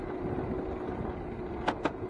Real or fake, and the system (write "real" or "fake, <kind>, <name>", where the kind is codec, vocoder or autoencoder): real